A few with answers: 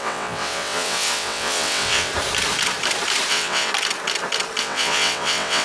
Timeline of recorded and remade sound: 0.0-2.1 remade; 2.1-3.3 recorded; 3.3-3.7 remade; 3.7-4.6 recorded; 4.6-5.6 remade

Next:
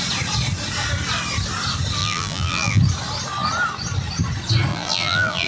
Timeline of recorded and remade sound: 0.0-2.0 recorded; 2.0-2.8 remade; 2.8-4.7 recorded; 4.7-5.5 remade

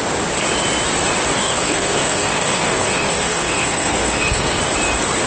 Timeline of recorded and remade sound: 0.0-1.4 recorded; 1.4-4.6 remade; 4.6-5.3 recorded

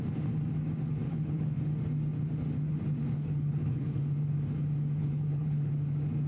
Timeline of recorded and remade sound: 0.0-1.0 recorded; 1.0-1.6 remade; 1.6-3.1 recorded; 3.1-4.0 remade; 4.0-5.0 recorded; 5.0-5.7 remade; 5.7-6.3 recorded

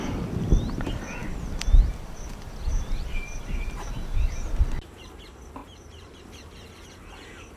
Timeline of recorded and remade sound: 0.0-2.7 recorded; 2.7-4.5 remade; 4.5-5.6 recorded; 5.6-6.2 remade; 6.2-7.6 recorded

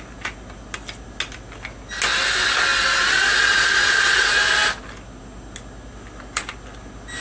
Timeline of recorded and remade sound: 0.0-7.2 recorded